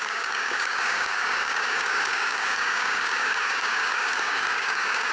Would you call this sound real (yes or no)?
no